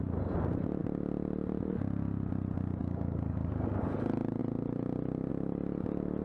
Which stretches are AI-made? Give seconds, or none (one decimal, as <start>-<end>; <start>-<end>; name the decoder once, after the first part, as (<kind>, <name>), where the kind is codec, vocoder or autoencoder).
2.8-3.8 (codec, DAC)